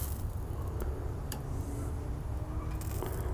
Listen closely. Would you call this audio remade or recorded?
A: recorded